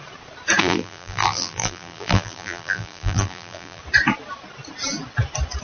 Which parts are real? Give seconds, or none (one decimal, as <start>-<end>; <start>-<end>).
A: 0.0-0.6; 3.8-5.6